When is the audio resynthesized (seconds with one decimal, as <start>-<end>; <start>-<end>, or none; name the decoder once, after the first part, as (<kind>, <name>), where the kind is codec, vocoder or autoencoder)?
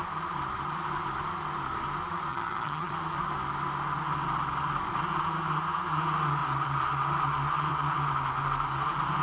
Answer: 2.3-2.9 (vocoder, HiFi-GAN)